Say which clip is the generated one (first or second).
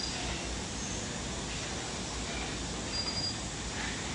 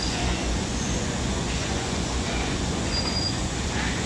second